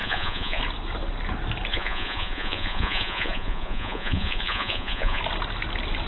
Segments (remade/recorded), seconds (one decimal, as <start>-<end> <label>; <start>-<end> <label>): 0.0-0.6 remade; 0.6-1.7 recorded; 1.7-5.2 remade; 5.2-6.1 recorded